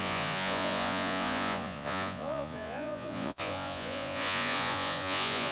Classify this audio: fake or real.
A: fake